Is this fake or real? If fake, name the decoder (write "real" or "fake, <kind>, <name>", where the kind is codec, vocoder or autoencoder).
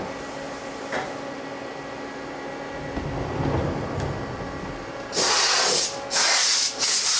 real